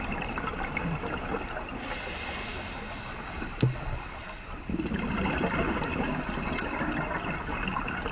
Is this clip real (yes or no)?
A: yes